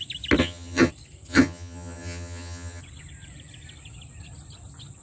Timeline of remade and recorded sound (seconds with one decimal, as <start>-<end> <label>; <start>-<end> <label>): 0.0-0.4 recorded; 0.4-0.9 remade; 0.9-1.3 recorded; 1.3-2.8 remade; 2.8-5.0 recorded

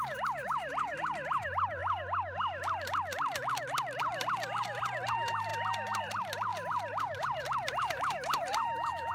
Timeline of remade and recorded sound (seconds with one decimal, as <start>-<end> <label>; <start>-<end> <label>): 0.0-1.8 remade; 1.8-5.1 recorded; 5.1-9.1 remade

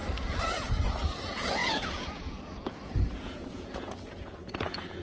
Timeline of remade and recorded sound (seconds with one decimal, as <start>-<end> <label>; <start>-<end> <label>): 0.0-0.7 recorded; 0.7-5.0 remade